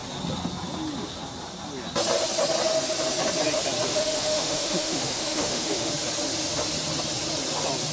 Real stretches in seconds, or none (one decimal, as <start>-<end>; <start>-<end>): 0.0-3.9; 5.9-7.9